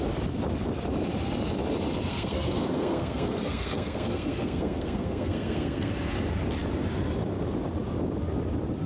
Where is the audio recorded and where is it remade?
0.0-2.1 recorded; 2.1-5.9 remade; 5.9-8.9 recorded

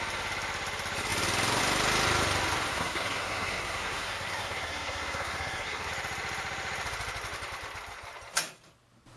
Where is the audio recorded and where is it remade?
0.0-2.7 recorded; 2.7-5.9 remade; 5.9-9.2 recorded

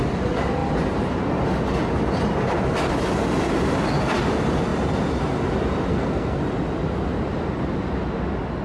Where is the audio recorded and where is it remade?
0.0-5.9 recorded; 5.9-6.4 remade; 6.4-8.6 recorded

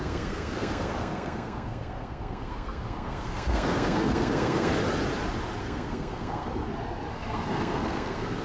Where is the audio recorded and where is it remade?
0.0-4.7 remade; 4.7-5.6 recorded; 5.6-6.5 remade; 6.5-7.1 recorded; 7.1-8.4 remade

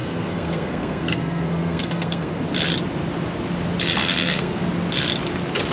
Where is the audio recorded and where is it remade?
0.0-2.4 remade; 2.4-4.0 recorded; 4.0-4.6 remade; 4.6-5.7 recorded

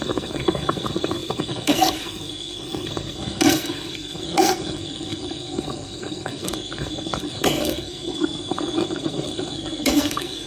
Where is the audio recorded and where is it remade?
0.0-10.5 remade